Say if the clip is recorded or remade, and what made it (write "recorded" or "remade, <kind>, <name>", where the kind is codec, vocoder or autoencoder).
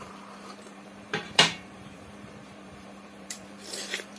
remade, vocoder, BigVGAN v2